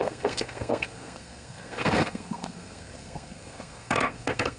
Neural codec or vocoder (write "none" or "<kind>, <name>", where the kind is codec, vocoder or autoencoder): codec, SNAC